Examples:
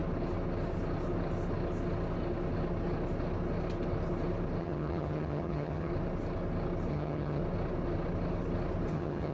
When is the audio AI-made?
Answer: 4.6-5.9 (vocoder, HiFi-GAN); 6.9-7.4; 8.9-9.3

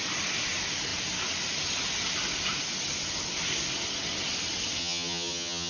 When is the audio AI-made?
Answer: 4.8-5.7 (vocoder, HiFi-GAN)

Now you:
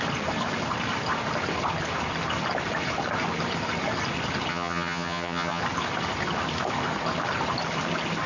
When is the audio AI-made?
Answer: 4.5-5.6 (vocoder, HiFi-GAN)

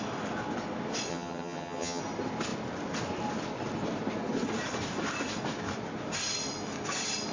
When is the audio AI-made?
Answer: 1.1-2.0 (vocoder, HiFi-GAN)

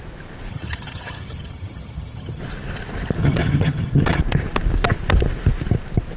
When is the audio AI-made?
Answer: 0.5-2.4 (vocoder, HiFi-GAN); 3.2-4.2